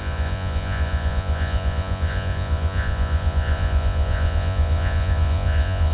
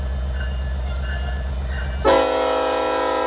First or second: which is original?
second